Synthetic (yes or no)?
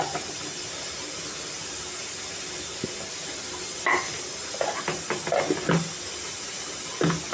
no